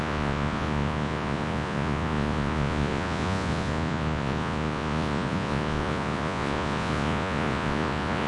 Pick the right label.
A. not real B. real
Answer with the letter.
A